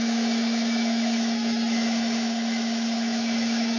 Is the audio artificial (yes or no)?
yes